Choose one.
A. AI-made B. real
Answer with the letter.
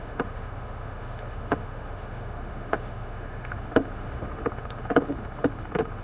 A